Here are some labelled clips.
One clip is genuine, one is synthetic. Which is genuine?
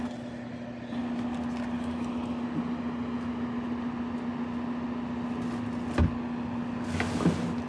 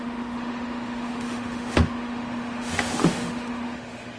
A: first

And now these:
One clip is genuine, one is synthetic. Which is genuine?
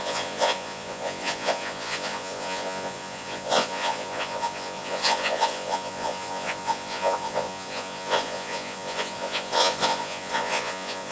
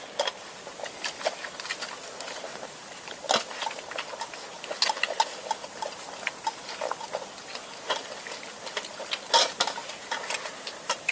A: second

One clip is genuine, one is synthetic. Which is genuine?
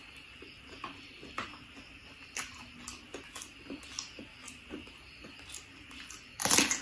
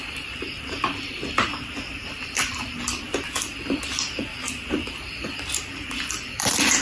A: first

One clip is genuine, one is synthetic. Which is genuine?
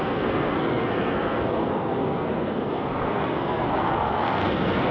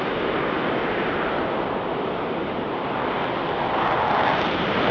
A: second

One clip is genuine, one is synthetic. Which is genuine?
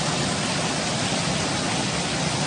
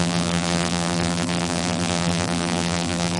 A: first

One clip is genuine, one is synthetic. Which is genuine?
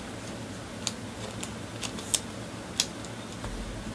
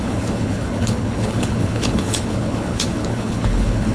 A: first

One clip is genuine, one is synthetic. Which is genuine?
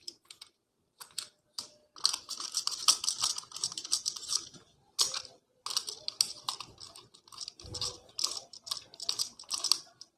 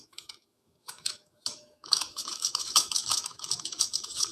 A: first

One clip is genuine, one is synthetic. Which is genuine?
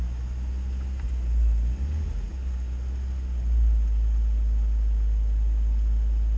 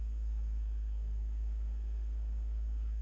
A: first